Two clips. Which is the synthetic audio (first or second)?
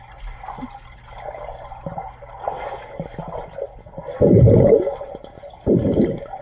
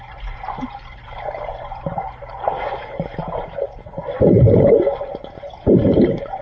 second